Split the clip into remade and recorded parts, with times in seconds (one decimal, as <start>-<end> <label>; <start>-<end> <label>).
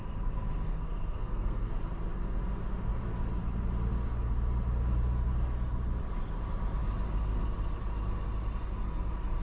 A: 0.0-0.7 recorded; 0.7-1.7 remade; 1.7-9.4 recorded